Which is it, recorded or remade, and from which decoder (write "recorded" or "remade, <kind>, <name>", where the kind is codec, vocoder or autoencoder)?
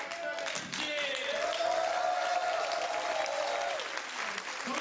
recorded